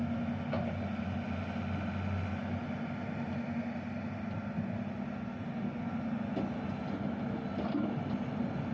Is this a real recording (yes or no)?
yes